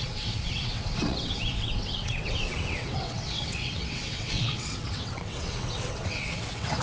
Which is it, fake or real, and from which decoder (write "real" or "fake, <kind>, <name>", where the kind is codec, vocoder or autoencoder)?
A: fake, vocoder, WaveNeXt